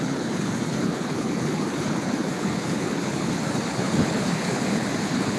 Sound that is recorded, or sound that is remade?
remade